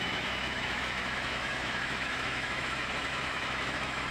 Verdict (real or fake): fake